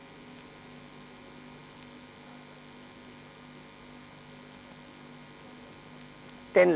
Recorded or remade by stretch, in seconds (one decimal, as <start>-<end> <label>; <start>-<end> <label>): 0.0-6.8 recorded